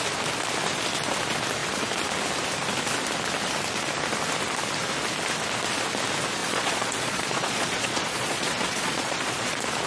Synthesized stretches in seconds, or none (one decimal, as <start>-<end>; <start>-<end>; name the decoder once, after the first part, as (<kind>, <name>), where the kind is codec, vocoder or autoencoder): 6.4-9.5 (vocoder, Vocos)